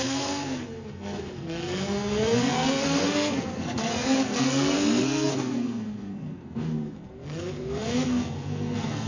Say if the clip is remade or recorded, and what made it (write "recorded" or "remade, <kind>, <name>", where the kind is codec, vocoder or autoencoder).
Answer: remade, codec, SNAC